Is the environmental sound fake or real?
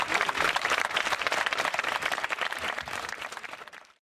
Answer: fake